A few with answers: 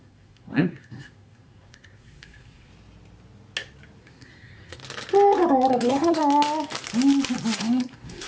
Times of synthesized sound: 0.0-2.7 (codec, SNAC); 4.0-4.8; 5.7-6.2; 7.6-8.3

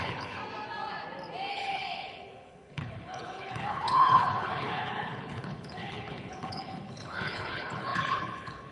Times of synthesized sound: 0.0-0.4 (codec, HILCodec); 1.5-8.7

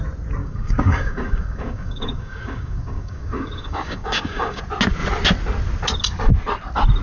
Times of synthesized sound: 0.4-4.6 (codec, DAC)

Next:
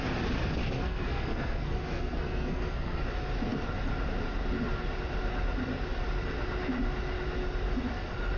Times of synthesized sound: 0.6-3.0 (codec, SNAC)